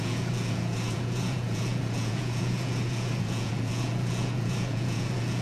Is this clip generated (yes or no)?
yes